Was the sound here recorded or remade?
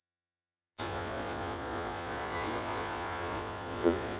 remade